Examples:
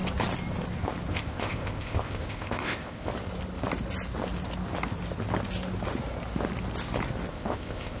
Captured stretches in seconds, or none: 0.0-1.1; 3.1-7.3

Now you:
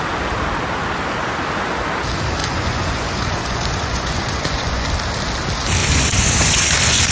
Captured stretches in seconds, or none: 0.0-2.4; 4.9-5.8

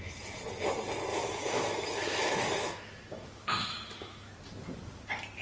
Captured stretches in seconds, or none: 0.0-1.1; 4.3-5.4

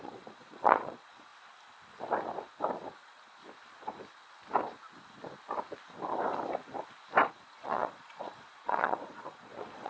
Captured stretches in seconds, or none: 1.3-3.0; 3.4-7.3

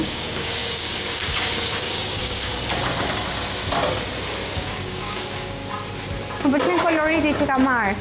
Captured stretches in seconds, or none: 2.5-4.5; 5.6-8.0

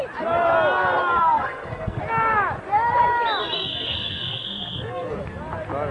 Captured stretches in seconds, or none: 0.0-1.2; 2.0-3.4; 5.1-5.9